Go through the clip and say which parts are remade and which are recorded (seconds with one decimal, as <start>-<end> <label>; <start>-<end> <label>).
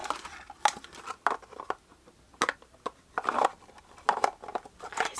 0.0-5.2 recorded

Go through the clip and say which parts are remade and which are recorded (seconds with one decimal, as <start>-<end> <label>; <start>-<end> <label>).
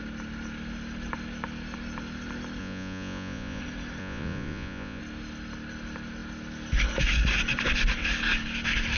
0.0-2.6 recorded; 2.6-3.6 remade; 3.6-4.0 recorded; 4.0-5.0 remade; 5.0-9.0 recorded